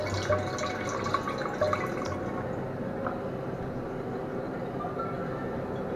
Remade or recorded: recorded